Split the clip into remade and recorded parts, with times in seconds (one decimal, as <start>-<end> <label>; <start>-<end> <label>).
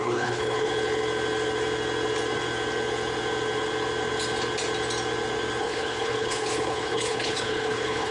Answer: 0.0-0.7 remade; 0.7-5.6 recorded; 5.6-8.1 remade